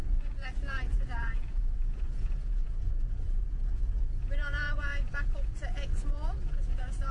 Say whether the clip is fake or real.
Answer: fake